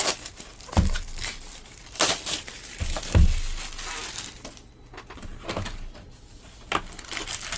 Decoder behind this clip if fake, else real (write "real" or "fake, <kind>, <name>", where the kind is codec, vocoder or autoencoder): real